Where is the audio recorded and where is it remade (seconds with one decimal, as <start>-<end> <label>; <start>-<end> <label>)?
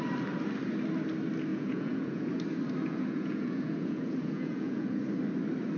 0.0-1.5 recorded; 1.5-2.3 remade; 2.3-2.8 recorded; 2.8-5.0 remade; 5.0-5.8 recorded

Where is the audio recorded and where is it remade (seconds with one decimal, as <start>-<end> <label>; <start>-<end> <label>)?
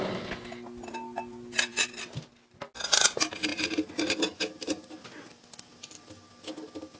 0.0-7.0 recorded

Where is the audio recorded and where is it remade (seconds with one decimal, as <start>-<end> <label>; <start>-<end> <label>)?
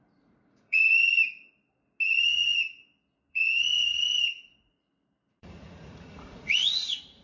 0.0-0.8 remade; 0.8-3.3 recorded; 3.3-3.7 remade; 3.7-5.3 recorded; 5.3-7.2 remade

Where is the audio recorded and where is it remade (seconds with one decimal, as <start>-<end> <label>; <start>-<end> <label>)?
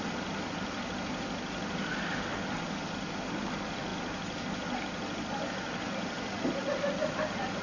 0.0-7.6 recorded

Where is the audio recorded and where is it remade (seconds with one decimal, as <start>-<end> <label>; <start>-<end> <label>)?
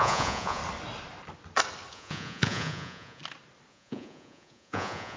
0.0-0.6 remade; 0.6-1.9 recorded; 1.9-3.2 remade; 3.2-3.7 recorded; 3.7-5.2 remade